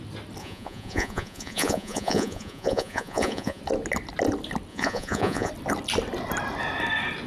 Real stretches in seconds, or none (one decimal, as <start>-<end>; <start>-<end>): 0.0-0.4; 3.6-4.7; 5.5-7.3